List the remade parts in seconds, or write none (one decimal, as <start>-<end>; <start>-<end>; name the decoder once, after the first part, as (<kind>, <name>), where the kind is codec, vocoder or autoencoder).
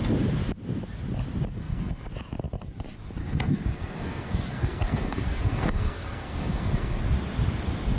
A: 1.6-2.1 (codec, SNAC); 3.2-7.0